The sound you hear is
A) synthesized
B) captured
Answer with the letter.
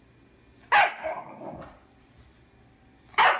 B